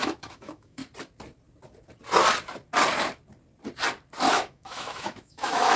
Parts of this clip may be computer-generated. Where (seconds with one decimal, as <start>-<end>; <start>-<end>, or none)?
0.0-0.8; 4.3-5.8